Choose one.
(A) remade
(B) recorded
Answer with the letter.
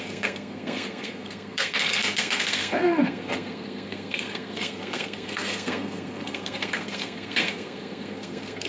A